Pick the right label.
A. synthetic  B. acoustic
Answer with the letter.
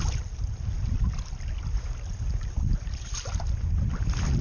B